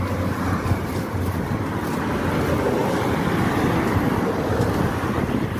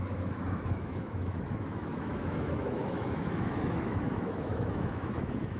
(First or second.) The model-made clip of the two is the second